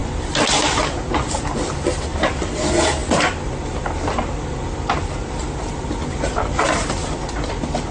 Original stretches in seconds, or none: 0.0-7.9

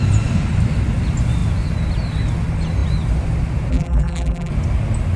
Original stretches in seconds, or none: 0.0-3.7; 4.5-5.2

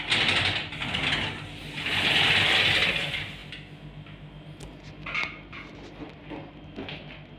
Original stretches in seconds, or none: 0.0-7.4

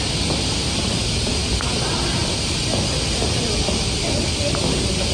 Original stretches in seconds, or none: 0.0-5.1

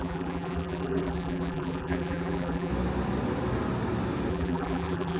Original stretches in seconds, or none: 2.7-4.3

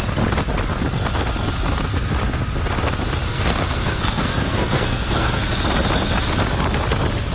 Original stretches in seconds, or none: 0.0-3.3; 5.4-7.3